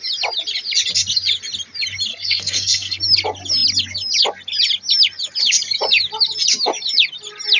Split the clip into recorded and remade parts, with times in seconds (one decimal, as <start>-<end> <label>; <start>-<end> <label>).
0.0-2.1 recorded; 2.1-3.0 remade; 3.0-7.6 recorded